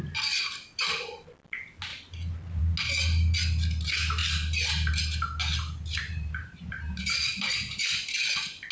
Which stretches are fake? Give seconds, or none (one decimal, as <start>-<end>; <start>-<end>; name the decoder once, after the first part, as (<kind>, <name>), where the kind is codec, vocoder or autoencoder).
5.9-8.0 (vocoder, BigVGAN v2)